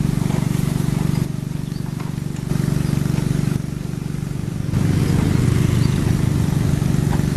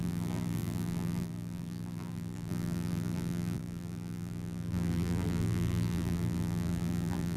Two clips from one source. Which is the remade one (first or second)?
second